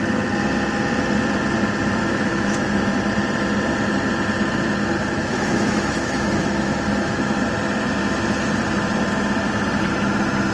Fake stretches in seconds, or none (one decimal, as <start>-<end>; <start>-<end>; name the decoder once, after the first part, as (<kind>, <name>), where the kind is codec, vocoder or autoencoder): 2.0-3.0 (autoencoder, DAC-VAE); 5.2-7.4